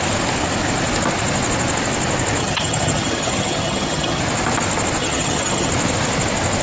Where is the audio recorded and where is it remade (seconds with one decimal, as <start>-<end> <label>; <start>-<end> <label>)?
0.0-2.4 recorded; 2.4-4.2 remade; 4.2-5.0 recorded; 5.0-5.7 remade; 5.7-6.6 recorded